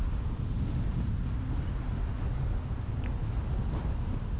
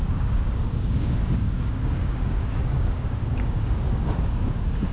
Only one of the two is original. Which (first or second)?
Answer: first